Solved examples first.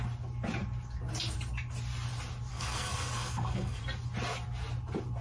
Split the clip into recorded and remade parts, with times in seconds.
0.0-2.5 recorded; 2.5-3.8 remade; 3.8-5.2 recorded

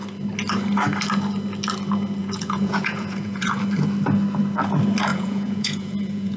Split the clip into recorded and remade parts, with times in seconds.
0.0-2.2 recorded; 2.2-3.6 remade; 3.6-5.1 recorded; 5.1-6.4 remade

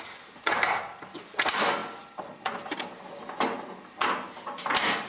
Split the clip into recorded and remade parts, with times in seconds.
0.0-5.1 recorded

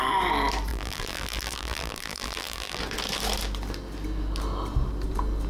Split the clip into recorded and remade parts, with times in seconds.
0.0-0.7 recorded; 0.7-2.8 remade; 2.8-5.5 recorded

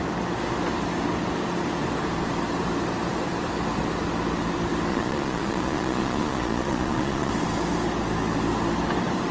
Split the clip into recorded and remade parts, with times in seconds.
0.0-4.9 recorded; 4.9-7.3 remade; 7.3-9.3 recorded

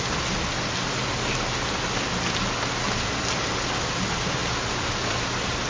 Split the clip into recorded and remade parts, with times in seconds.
0.0-5.7 recorded